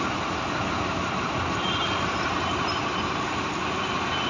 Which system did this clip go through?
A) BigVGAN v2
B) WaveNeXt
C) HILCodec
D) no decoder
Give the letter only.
D